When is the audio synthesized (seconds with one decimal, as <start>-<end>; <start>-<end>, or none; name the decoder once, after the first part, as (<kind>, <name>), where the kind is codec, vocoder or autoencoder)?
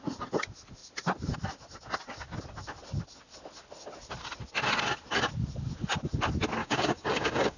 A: 6.6-7.6 (codec, DAC)